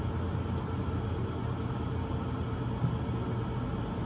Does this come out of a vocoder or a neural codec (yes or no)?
no